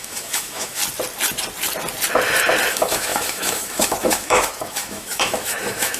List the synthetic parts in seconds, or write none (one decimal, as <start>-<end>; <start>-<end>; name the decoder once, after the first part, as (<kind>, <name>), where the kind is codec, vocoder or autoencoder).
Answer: 0.0-0.8 (autoencoder, DAC-VAE); 2.7-6.0